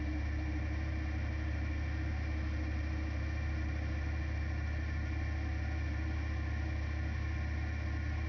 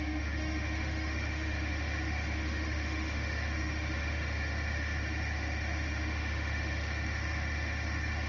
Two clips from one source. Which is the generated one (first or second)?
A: second